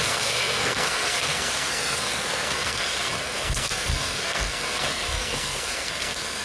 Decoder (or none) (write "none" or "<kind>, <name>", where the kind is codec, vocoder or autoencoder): codec, SNAC